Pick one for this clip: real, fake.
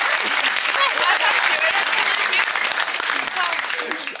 real